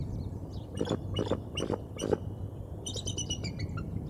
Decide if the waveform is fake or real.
real